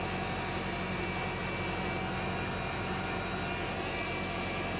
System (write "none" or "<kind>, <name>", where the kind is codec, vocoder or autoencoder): none